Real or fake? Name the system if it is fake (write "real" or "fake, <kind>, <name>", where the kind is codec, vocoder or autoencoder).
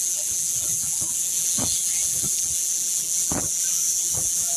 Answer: fake, vocoder, BigVGAN v2